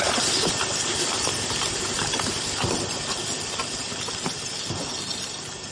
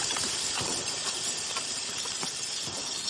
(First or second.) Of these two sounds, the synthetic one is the second